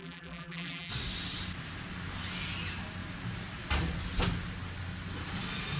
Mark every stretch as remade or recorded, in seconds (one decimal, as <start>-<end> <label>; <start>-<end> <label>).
0.0-0.9 remade; 0.9-5.8 recorded